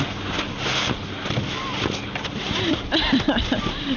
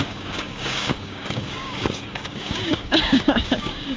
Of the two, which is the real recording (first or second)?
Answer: first